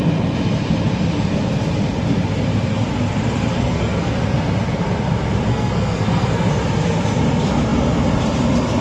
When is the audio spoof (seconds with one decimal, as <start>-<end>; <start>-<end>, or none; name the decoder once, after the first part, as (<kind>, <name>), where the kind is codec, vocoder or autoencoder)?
3.5-4.1 (codec, SNAC); 5.5-6.5